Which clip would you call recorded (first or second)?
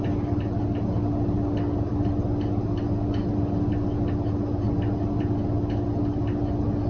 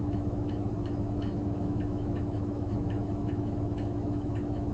first